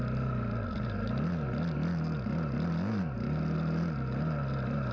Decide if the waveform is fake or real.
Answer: real